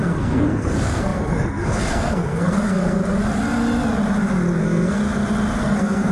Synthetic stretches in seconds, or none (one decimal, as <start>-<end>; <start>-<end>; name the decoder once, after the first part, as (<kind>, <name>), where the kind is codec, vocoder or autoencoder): 0.0-3.0 (codec, SNAC); 4.6-5.0; 5.6-6.1